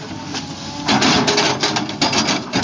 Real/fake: real